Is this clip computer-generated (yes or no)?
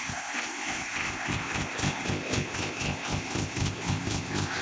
yes